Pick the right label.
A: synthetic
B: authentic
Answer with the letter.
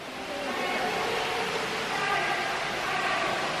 B